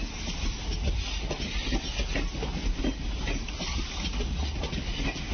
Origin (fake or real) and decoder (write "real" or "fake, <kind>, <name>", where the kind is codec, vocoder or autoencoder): real